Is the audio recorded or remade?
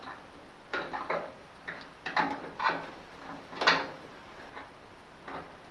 recorded